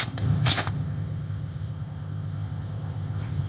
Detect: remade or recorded remade